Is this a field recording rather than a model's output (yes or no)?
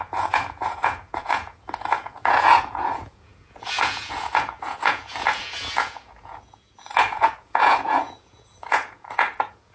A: no